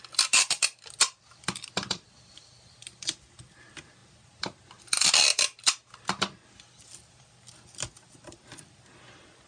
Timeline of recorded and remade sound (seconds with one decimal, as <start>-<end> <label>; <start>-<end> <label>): 0.0-9.5 recorded